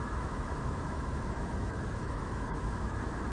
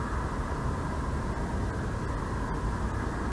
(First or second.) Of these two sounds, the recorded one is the second